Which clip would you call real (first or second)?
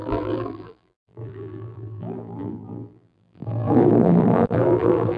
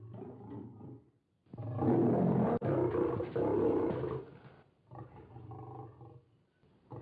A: second